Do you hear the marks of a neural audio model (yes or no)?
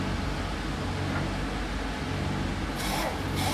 no